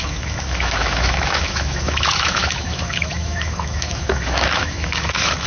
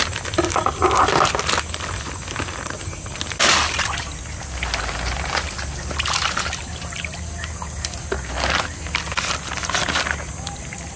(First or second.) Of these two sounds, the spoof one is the first